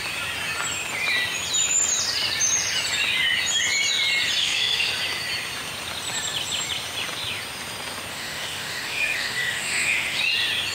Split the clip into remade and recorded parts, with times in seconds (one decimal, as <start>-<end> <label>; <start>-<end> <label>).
0.0-4.4 recorded; 4.4-4.9 remade; 4.9-8.1 recorded; 8.1-10.2 remade; 10.2-10.7 recorded